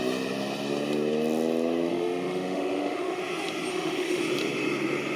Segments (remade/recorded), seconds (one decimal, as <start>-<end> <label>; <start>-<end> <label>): 0.0-1.9 recorded; 1.9-3.2 remade; 3.2-3.7 recorded; 3.7-4.2 remade; 4.2-5.2 recorded